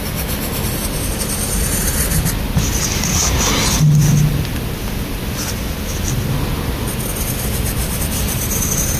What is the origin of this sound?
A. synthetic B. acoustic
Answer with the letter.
B